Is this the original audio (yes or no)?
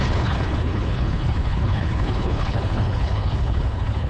no